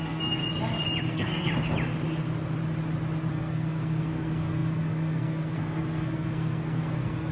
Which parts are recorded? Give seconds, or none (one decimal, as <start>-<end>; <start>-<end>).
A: 0.4-1.0; 1.5-3.3